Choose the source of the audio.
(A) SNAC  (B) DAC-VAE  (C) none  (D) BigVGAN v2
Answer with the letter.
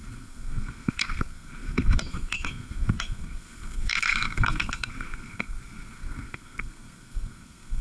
A